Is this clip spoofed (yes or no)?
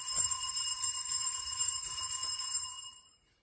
yes